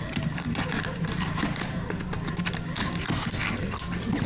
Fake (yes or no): no